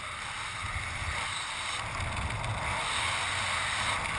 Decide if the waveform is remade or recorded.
recorded